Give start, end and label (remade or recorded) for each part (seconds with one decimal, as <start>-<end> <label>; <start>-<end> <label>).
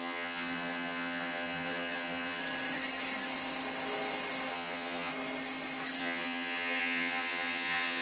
0.0-2.4 remade; 2.4-4.5 recorded; 4.5-5.1 remade; 5.1-6.0 recorded; 6.0-8.0 remade